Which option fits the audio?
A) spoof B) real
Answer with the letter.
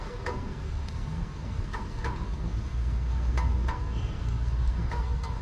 A